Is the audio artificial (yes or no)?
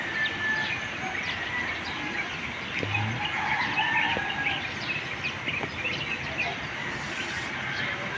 no